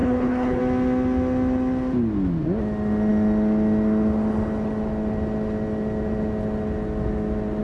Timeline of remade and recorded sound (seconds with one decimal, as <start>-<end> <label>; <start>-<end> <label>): 0.0-0.6 remade; 0.6-7.6 recorded